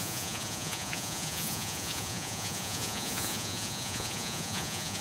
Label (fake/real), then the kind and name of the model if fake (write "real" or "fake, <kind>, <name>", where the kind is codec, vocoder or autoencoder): fake, vocoder, Vocos